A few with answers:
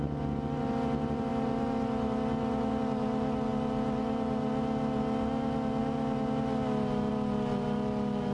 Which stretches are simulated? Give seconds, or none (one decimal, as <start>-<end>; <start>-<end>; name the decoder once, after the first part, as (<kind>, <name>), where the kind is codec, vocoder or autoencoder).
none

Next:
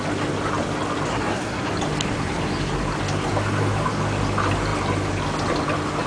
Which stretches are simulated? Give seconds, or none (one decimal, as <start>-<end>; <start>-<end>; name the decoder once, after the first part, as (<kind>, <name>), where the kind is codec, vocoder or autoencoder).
1.1-1.7 (codec, SNAC)

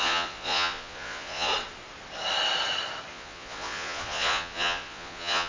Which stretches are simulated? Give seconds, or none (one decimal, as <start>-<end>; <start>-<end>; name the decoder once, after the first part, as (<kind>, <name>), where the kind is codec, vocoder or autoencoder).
0.0-1.5 (vocoder, Vocos); 3.1-5.5